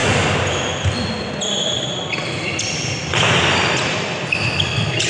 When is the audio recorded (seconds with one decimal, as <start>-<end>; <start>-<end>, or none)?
1.9-4.0